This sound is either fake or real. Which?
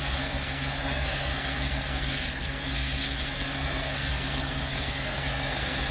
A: fake